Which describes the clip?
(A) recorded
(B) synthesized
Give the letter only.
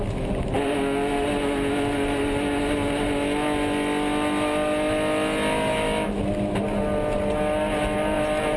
A